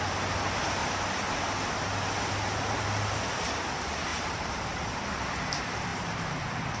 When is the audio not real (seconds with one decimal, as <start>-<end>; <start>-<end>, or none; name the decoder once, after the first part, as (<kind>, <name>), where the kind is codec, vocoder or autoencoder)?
4.1-4.8 (vocoder, BigVGAN v2); 5.9-6.8